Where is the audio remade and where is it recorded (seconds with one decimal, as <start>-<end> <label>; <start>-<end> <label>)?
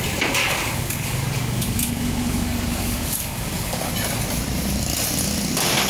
0.0-0.4 recorded; 0.4-3.9 remade; 3.9-5.9 recorded